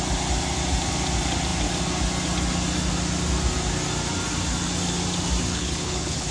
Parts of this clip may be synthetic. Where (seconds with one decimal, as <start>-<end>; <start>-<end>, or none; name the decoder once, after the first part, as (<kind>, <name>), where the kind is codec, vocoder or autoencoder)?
5.5-6.3 (codec, HILCodec)